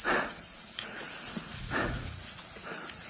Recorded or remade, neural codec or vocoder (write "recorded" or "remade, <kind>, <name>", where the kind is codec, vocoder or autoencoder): remade, vocoder, Vocos